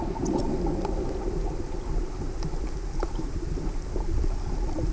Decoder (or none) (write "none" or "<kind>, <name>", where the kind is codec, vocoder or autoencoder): none